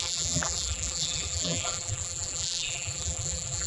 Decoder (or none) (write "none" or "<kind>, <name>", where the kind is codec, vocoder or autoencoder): vocoder, BigVGAN v2